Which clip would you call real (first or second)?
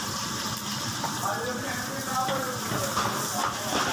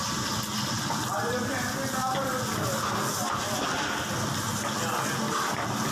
second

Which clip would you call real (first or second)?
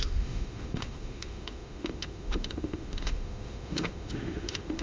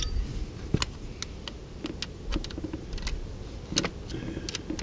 second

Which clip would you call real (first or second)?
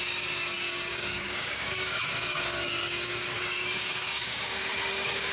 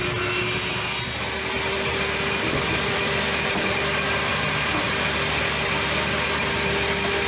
second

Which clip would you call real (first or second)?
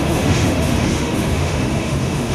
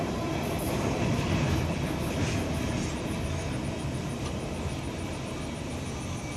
second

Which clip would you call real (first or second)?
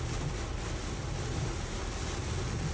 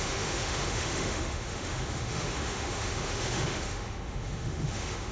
first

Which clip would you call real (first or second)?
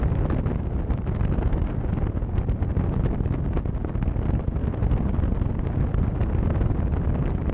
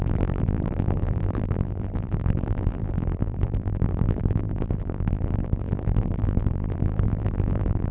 first